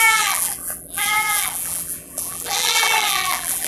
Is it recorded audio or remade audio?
remade